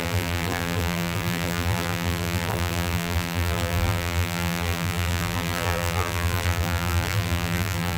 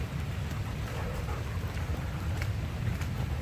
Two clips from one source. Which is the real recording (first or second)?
second